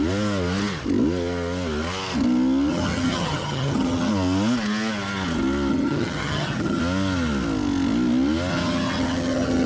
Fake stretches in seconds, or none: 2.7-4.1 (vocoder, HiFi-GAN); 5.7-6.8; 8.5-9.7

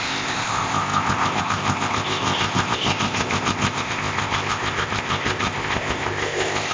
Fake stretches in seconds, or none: 0.0-6.7 (codec, ZipCodec)

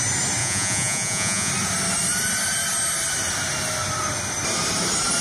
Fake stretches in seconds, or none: 0.4-1.5 (vocoder, Vocos)

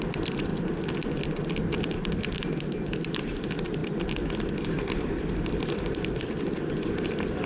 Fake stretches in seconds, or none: 0.0-0.5 (vocoder, BigVGAN v2); 3.2-7.5